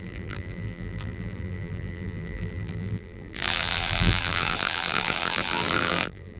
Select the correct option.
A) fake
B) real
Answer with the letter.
A